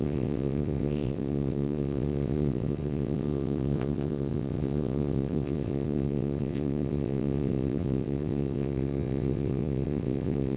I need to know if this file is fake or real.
fake